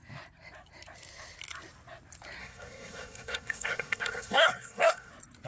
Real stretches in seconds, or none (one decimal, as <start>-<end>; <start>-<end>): 0.0-2.4; 5.1-5.5